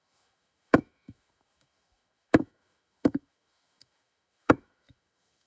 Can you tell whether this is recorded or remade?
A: remade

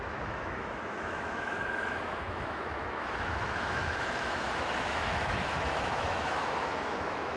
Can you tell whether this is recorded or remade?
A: remade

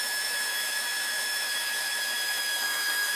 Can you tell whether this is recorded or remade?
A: remade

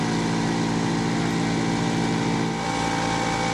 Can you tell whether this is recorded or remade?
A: recorded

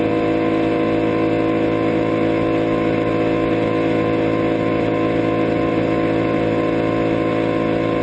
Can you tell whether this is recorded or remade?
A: recorded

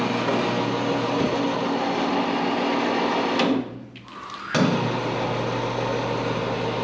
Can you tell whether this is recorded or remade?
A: recorded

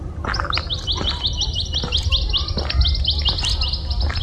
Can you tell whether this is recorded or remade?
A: recorded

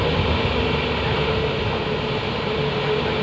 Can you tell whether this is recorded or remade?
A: recorded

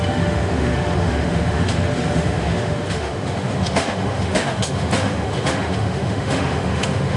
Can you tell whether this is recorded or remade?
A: remade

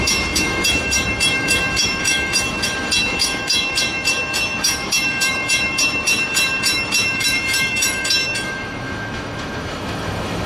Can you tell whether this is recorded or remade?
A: remade